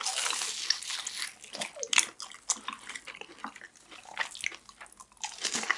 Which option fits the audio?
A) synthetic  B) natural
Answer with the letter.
B